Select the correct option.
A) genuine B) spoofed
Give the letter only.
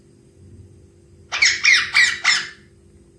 A